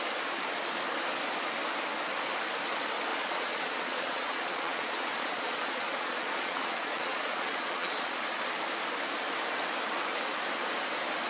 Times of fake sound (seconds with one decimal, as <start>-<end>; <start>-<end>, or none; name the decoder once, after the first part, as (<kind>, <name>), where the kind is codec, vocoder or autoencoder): 3.1-8.2 (vocoder, Vocos)